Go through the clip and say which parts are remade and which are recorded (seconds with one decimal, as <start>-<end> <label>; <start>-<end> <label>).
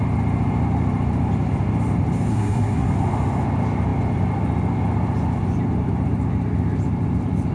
0.0-2.3 recorded; 2.3-2.9 remade; 2.9-7.5 recorded